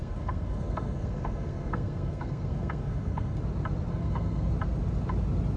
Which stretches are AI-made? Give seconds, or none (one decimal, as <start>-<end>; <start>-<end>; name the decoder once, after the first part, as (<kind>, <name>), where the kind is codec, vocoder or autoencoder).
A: 0.0-3.4 (codec, SNAC); 3.9-4.5